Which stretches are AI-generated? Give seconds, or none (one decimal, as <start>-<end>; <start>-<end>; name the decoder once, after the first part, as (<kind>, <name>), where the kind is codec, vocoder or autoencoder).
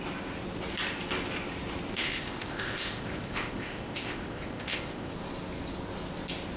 1.9-5.1 (codec, ZipCodec)